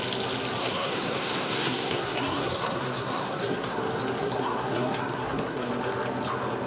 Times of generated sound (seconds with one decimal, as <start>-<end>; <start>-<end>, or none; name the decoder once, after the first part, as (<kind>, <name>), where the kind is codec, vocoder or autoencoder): 0.6-3.8 (codec, SNAC); 4.2-5.7